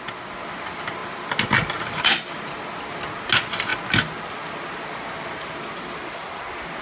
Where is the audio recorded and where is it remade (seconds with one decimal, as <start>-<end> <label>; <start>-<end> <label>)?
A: 0.0-6.8 recorded